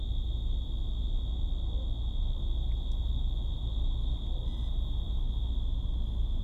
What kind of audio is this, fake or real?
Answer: real